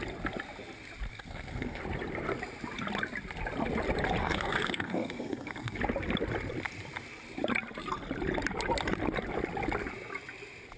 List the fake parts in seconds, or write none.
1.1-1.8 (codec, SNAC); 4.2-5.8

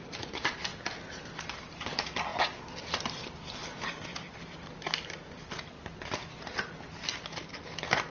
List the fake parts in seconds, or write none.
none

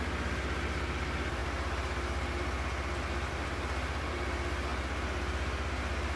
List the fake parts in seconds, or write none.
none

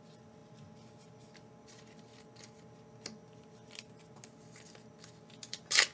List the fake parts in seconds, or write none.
none

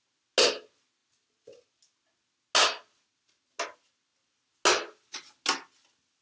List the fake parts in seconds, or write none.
none

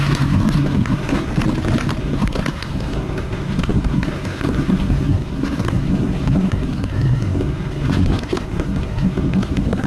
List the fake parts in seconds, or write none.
0.0-1.3 (codec, SNAC); 2.0-9.9